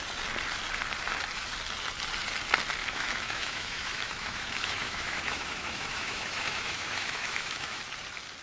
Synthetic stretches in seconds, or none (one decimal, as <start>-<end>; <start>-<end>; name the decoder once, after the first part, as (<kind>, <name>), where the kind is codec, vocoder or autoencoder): 2.8-7.8 (autoencoder, DAC-VAE)